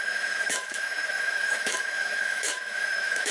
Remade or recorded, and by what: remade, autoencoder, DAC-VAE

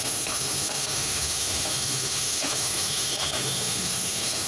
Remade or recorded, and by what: remade, autoencoder, DAC-VAE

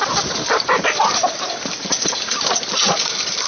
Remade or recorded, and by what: recorded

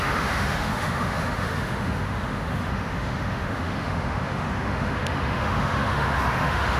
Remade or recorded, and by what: remade, autoencoder, DAC-VAE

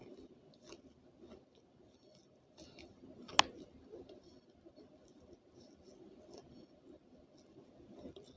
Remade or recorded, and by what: recorded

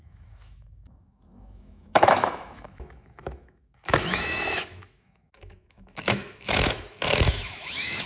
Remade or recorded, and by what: remade, autoencoder, DAC-VAE